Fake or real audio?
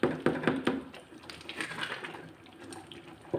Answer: real